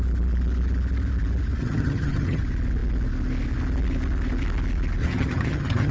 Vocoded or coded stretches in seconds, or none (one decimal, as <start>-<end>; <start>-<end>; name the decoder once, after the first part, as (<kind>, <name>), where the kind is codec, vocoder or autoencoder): 1.6-2.4 (vocoder, HiFi-GAN); 5.0-5.9